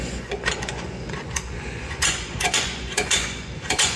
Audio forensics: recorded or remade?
remade